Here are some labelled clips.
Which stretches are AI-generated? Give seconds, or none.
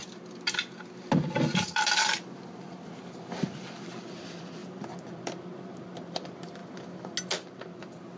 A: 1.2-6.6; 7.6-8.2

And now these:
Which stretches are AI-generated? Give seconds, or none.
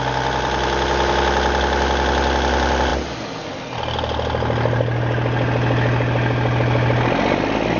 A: none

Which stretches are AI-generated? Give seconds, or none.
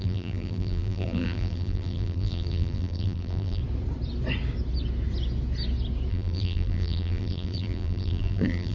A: 0.0-3.6; 6.1-8.7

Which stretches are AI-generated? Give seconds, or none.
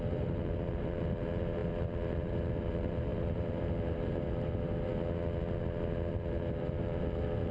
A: 0.0-4.9; 6.1-7.5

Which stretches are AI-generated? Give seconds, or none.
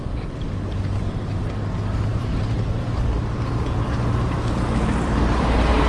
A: 2.1-5.9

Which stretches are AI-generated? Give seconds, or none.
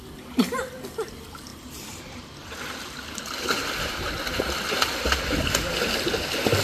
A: 1.5-2.6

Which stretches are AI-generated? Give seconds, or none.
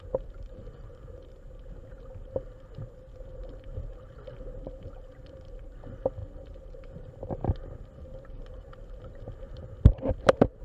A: none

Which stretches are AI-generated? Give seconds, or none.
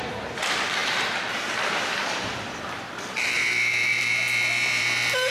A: 0.0-5.3